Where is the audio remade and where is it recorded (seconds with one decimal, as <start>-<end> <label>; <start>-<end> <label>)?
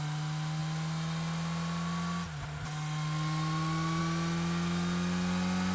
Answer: 0.0-5.7 recorded